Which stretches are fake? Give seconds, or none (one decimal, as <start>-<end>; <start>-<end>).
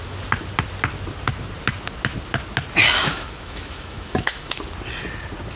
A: 3.1-4.6